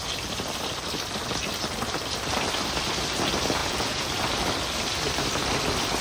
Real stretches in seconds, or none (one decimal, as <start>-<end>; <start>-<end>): 0.0-3.6; 4.1-6.0